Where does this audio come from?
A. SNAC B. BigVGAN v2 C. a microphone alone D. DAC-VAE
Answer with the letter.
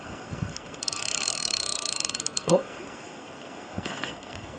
A